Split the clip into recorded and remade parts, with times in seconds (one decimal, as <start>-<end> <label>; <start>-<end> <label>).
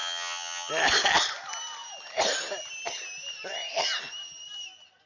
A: 0.0-0.7 remade; 0.7-5.1 recorded